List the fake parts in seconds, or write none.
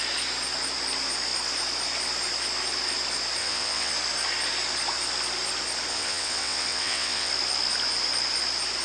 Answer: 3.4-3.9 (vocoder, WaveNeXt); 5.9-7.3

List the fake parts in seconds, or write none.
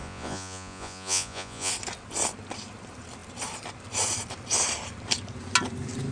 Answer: 0.0-1.7 (vocoder, Vocos)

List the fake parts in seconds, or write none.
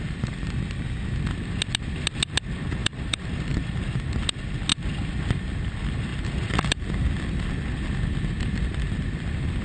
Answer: 2.8-3.8 (vocoder, BigVGAN v2)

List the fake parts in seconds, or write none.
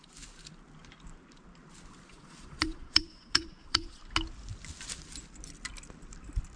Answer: 2.1-4.0 (vocoder, Vocos)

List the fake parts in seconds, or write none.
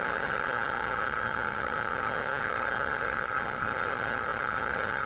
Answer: 0.0-5.1 (vocoder, HiFi-GAN)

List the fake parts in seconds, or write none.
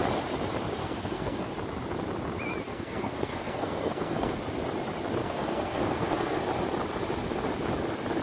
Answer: 0.8-1.5 (codec, SNAC); 2.7-4.4; 5.2-6.4